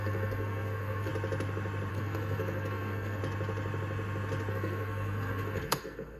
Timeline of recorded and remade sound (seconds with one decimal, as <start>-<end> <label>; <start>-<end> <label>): 0.0-1.1 remade; 1.1-1.9 recorded; 1.9-3.2 remade; 3.2-4.5 recorded; 4.5-6.2 remade